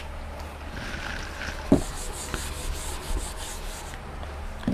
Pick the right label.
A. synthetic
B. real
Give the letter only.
B